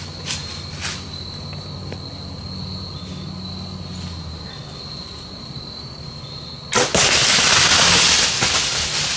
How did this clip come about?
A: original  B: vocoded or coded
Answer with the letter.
A